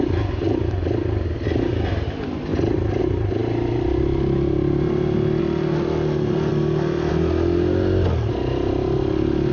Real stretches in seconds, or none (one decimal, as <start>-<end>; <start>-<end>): 0.0-9.5